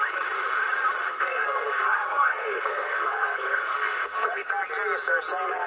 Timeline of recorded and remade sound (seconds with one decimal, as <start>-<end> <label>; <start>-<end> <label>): 0.0-1.1 recorded; 1.1-4.5 remade; 4.5-5.7 recorded